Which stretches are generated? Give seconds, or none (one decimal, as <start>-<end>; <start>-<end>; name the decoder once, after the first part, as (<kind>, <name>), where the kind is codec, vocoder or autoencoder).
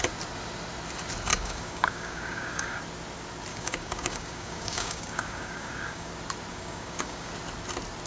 1.3-2.8 (codec, DAC); 3.5-6.1; 6.5-7.3